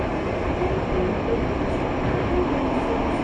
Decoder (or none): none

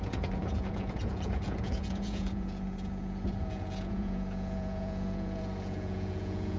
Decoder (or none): vocoder, Vocos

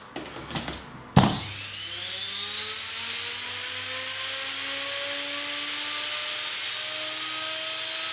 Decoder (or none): none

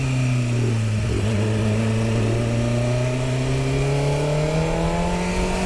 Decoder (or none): none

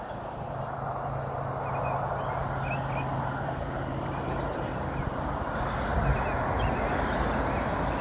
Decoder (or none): none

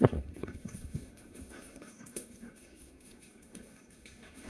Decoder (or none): codec, SNAC